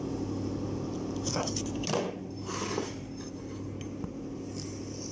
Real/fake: real